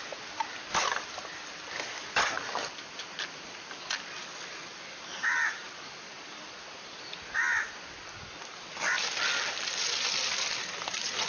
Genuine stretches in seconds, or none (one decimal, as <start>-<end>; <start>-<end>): 0.0-11.3